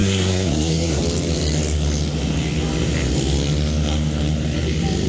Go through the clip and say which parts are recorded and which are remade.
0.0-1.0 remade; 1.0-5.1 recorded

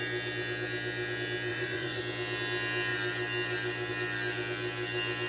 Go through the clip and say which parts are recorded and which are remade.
0.0-1.5 recorded; 1.5-2.0 remade; 2.0-5.3 recorded